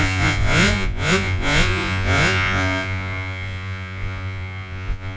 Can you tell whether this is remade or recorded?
remade